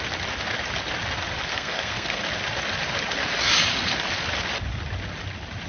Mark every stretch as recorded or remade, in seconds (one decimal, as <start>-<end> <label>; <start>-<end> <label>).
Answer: 0.0-1.5 recorded; 1.5-2.2 remade; 2.2-5.7 recorded